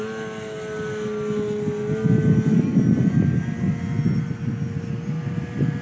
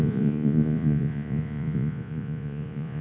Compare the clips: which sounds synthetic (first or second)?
second